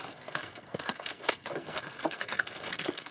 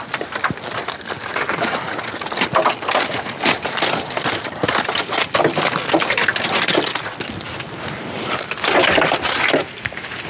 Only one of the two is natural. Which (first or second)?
second